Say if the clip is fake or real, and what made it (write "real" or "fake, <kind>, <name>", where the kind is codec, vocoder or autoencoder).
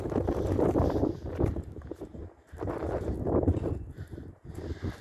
real